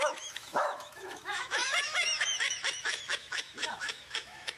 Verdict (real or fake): fake